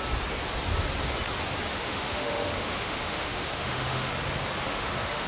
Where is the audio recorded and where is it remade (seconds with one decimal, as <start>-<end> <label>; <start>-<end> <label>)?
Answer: 0.0-1.7 recorded; 1.7-4.1 remade; 4.1-4.7 recorded; 4.7-5.3 remade